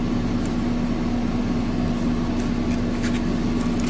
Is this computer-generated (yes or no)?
no